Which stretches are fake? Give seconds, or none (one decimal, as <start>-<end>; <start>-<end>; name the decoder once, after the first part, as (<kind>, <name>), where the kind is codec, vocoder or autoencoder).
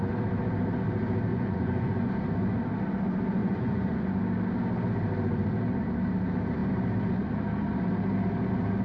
1.3-2.1 (vocoder, Vocos); 3.4-4.2